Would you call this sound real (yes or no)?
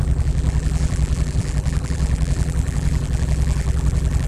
no